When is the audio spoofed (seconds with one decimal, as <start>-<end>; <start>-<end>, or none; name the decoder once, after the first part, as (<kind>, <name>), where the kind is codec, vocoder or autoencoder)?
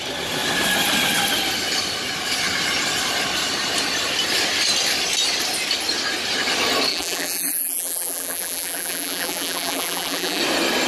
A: 6.9-10.4 (vocoder, BigVGAN v2)